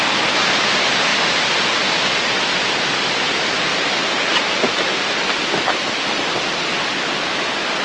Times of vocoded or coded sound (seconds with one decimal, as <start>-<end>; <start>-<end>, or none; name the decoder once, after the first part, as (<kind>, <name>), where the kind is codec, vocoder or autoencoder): none